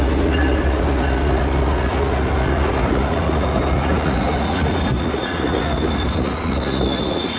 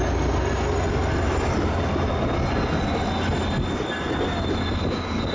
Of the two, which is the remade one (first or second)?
first